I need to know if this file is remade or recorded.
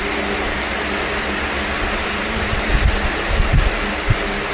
recorded